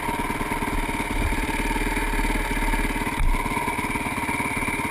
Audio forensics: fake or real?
real